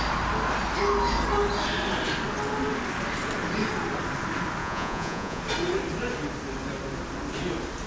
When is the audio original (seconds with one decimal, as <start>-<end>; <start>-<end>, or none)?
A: 0.0-4.6; 5.4-7.9